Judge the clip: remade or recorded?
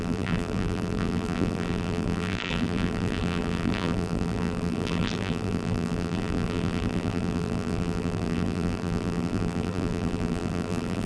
remade